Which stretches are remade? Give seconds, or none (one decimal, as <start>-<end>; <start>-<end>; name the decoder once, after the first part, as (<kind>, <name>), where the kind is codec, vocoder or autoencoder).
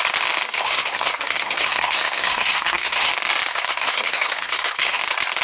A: 0.5-3.1 (codec, SNAC); 3.5-5.0